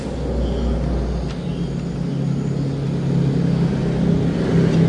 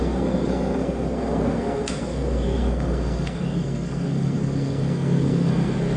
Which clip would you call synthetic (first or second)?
second